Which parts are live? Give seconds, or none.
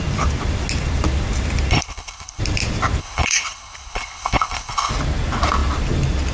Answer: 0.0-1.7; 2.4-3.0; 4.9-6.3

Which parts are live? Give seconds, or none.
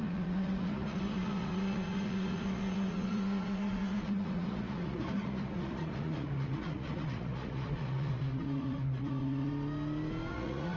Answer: 9.5-10.3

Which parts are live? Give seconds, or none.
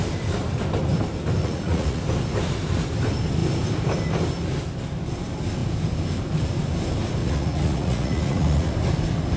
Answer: 0.0-1.4; 2.0-7.2; 8.7-9.4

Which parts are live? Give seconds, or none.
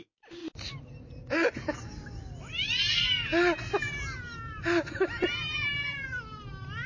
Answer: 0.0-6.9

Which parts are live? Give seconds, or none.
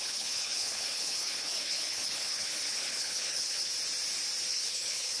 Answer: 3.7-4.5